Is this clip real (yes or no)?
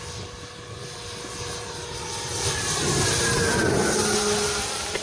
yes